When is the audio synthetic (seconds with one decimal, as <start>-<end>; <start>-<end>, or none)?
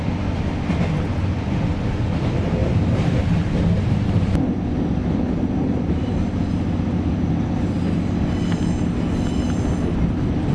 none